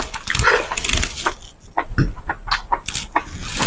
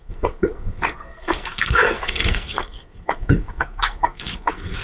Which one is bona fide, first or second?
first